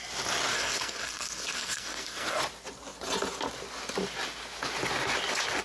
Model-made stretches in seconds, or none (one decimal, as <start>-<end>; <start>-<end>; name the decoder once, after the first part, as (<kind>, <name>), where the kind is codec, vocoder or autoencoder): 0.5-2.4 (codec, SNAC)